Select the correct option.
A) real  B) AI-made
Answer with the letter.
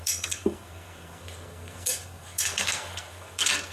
B